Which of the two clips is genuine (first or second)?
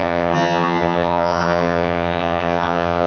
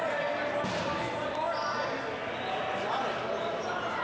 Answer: second